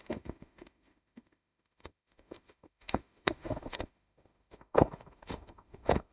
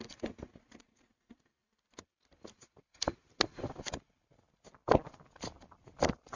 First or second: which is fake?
first